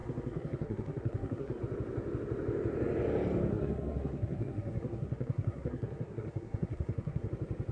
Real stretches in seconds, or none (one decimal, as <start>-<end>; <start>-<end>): 1.6-3.5; 7.3-7.7